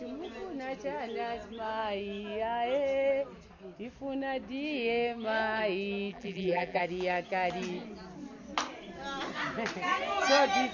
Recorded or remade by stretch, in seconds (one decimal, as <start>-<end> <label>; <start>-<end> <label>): 0.0-6.1 recorded; 6.1-6.8 remade; 6.8-10.7 recorded